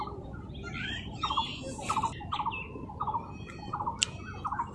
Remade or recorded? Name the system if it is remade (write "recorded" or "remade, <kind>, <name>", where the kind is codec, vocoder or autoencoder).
recorded